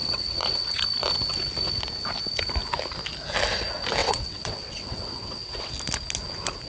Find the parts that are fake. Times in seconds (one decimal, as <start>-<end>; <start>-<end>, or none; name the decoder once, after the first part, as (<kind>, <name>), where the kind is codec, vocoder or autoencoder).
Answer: 0.0-0.8 (vocoder, WaveNeXt); 4.0-5.7